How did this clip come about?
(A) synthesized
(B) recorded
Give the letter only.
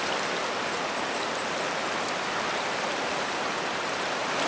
B